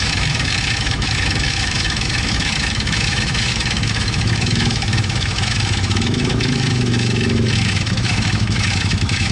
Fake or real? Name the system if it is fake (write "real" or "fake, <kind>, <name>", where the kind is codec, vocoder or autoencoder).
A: fake, autoencoder, DAC-VAE